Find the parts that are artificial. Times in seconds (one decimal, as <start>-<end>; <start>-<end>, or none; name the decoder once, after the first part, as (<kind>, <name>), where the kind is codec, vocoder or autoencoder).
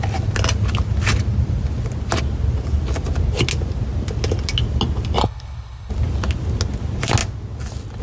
5.2-5.9 (codec, HILCodec)